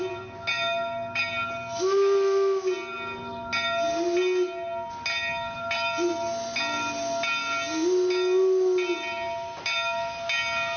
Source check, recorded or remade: recorded